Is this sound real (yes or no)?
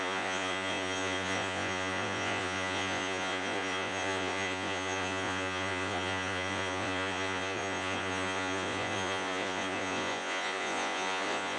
no